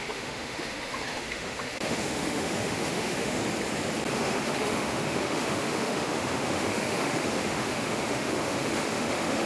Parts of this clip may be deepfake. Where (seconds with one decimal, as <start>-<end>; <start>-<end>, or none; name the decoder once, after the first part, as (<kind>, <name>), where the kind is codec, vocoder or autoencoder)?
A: 0.0-3.4 (autoencoder, DAC-VAE); 4.1-9.5